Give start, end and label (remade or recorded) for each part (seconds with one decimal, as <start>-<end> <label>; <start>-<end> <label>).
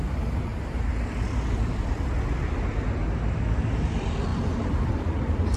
0.0-0.5 remade; 0.5-3.8 recorded; 3.8-5.6 remade